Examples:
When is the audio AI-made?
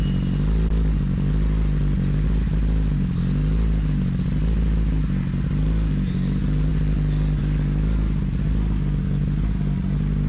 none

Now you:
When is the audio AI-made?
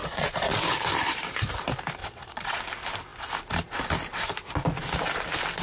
0.0-0.6; 2.0-2.6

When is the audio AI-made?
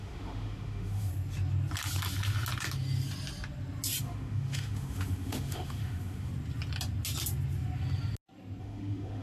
0.0-1.1; 4.0-6.3; 8.6-9.2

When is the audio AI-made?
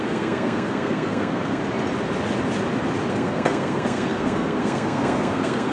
0.0-1.6; 3.1-5.7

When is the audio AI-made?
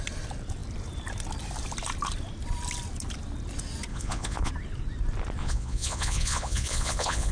3.9-4.5; 5.4-7.3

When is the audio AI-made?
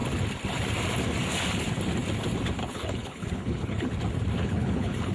2.6-3.9; 4.4-5.1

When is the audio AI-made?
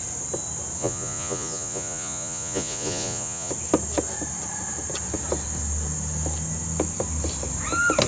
0.8-3.5